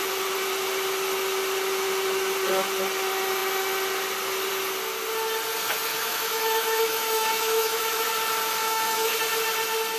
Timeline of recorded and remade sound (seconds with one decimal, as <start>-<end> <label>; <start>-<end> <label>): 0.0-5.9 recorded; 5.9-8.1 remade; 8.1-8.6 recorded; 8.6-9.2 remade; 9.2-10.0 recorded